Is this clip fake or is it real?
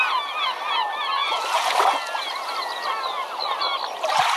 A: real